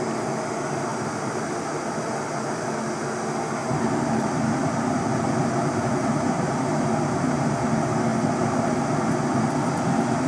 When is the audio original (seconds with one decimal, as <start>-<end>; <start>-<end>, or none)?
0.0-0.9; 2.1-3.6; 7.7-10.3